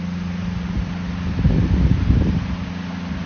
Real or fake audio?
real